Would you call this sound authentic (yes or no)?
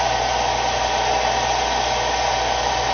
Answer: yes